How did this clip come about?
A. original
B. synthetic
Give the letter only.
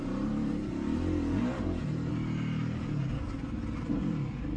A